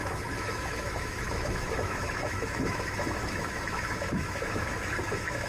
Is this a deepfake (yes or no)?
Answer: yes